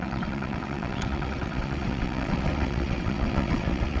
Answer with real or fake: fake